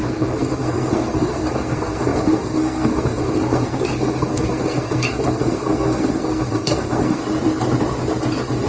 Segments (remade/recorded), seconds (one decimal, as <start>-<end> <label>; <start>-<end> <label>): 0.0-7.2 remade; 7.2-8.7 recorded